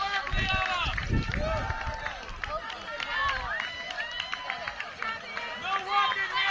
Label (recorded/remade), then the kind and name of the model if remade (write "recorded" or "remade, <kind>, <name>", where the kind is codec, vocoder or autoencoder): recorded